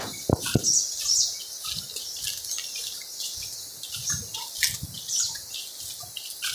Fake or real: real